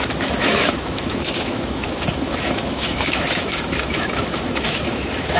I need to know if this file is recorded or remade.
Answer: remade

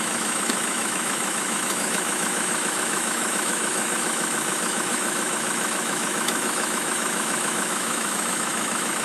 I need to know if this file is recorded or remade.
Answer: remade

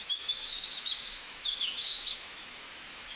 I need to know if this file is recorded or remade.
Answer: remade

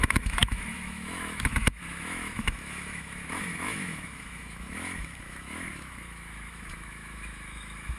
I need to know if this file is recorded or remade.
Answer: remade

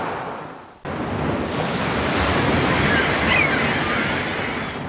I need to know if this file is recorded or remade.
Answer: recorded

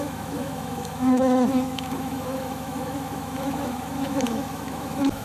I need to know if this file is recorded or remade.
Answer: remade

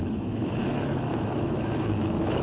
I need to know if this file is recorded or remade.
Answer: remade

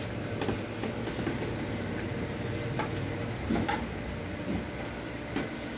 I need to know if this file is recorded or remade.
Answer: recorded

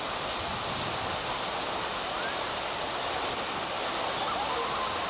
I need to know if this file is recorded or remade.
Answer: recorded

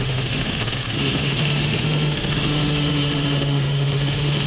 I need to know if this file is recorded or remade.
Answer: remade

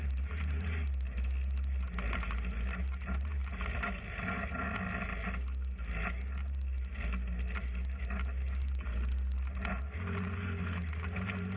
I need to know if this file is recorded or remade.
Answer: recorded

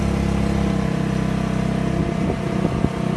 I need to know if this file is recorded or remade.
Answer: recorded